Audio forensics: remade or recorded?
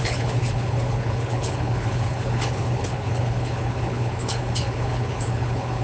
remade